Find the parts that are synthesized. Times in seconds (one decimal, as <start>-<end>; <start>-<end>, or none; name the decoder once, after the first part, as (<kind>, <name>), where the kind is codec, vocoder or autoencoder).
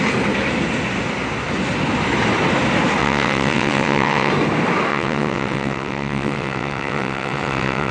3.0-4.3 (vocoder, WaveNeXt); 4.9-7.9